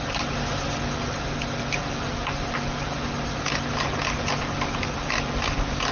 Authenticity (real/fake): real